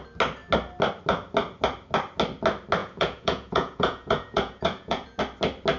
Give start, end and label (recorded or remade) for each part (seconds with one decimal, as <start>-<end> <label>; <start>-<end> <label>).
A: 0.0-2.8 recorded; 2.8-5.2 remade; 5.2-5.8 recorded